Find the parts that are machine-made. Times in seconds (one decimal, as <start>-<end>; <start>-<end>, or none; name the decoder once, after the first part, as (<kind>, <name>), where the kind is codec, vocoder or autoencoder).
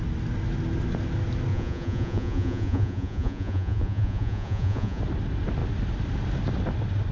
1.5-5.0 (vocoder, Vocos)